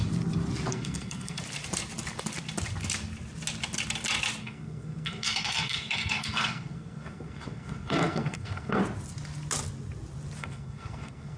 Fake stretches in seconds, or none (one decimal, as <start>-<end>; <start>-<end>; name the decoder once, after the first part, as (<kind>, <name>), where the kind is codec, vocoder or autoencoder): 0.7-1.4 (codec, SNAC); 4.4-8.8; 10.4-11.4